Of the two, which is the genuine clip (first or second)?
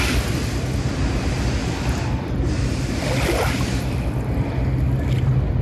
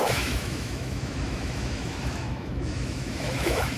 first